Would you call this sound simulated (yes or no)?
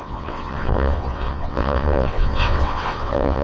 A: yes